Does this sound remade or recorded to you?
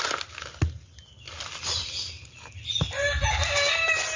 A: recorded